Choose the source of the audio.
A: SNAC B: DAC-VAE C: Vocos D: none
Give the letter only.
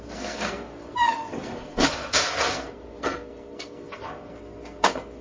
A